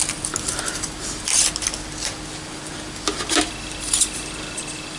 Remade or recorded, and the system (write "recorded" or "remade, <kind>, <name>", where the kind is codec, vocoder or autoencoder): recorded